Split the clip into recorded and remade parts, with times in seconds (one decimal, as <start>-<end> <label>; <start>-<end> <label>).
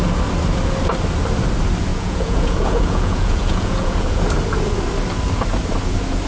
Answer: 0.0-1.9 recorded; 1.9-4.2 remade; 4.2-6.3 recorded